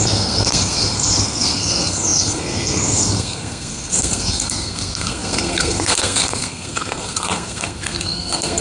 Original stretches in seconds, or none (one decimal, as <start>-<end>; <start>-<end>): none